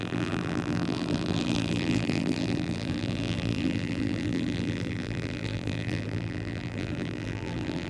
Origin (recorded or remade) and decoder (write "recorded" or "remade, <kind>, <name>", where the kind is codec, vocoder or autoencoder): remade, vocoder, BigVGAN v2